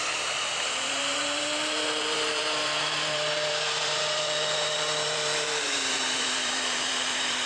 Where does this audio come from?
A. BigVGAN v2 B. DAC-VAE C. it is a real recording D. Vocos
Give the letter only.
A